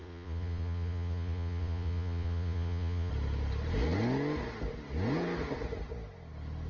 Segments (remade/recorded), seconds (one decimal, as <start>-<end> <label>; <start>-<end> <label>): 0.0-3.1 remade; 3.1-6.7 recorded